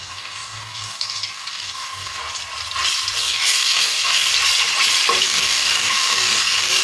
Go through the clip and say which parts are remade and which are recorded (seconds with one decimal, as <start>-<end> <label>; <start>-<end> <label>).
0.0-2.2 remade; 2.2-3.2 recorded; 3.2-4.3 remade; 4.3-5.2 recorded; 5.2-6.8 remade